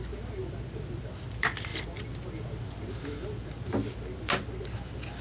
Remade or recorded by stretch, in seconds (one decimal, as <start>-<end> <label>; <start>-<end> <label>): 0.0-5.2 recorded